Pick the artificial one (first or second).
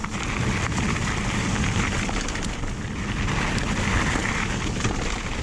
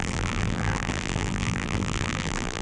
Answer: second